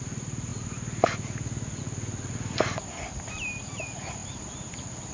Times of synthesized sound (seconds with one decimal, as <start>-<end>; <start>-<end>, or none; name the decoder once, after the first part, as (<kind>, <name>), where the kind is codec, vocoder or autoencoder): none